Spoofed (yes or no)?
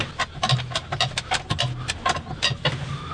no